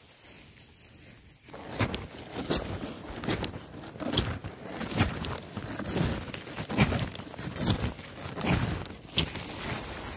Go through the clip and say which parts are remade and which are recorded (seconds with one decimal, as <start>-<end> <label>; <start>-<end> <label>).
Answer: 0.0-10.2 recorded